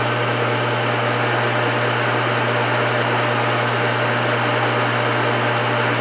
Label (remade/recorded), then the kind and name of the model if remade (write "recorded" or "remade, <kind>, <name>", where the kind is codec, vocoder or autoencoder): recorded